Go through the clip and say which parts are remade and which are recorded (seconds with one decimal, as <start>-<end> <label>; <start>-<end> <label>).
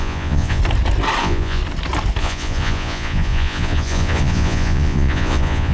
0.0-0.6 remade; 0.6-1.2 recorded; 1.2-1.6 remade; 1.6-2.2 recorded; 2.2-5.7 remade